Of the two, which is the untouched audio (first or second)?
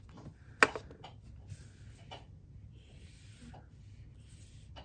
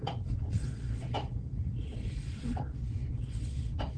first